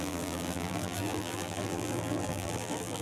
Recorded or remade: remade